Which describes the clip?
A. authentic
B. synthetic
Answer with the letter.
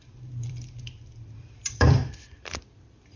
B